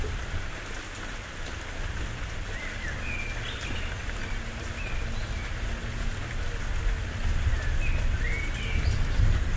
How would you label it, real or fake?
real